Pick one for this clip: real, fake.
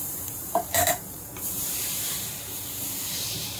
fake